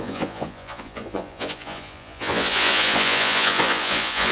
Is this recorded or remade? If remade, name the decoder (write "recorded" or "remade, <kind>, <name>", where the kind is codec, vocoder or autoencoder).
remade, vocoder, Vocos